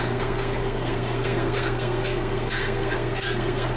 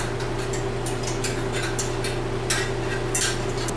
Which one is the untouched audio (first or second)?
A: second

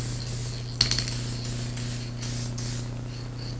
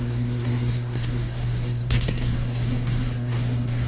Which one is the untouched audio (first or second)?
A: first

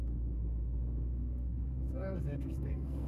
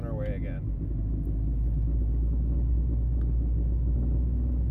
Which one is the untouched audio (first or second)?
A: second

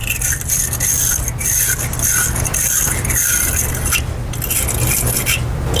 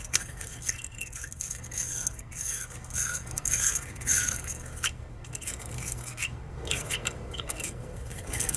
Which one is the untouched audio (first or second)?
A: first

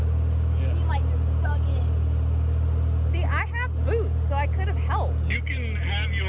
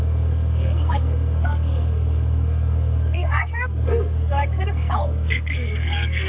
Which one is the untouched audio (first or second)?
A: first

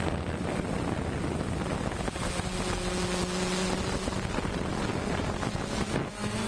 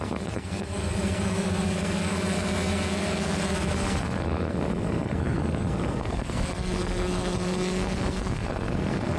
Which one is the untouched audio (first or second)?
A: first